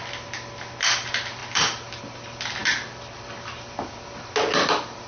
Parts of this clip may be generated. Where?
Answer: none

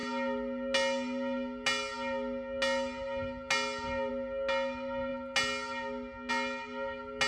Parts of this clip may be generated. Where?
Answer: none

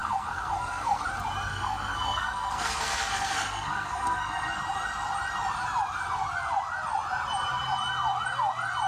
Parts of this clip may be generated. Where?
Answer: 0.0-1.1 (codec, SNAC); 1.5-4.6

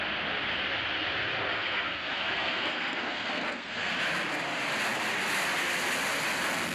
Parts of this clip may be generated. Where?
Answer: 1.5-3.9 (codec, SNAC)

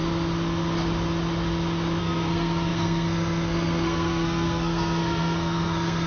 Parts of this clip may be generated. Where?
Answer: 2.0-6.1 (codec, SNAC)